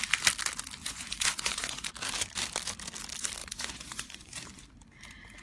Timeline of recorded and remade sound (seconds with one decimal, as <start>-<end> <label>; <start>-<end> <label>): 0.0-0.8 recorded; 0.8-1.9 remade; 1.9-3.4 recorded; 3.4-4.7 remade; 4.7-5.4 recorded